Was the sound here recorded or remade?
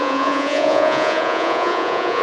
remade